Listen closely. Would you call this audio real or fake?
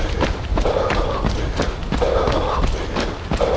real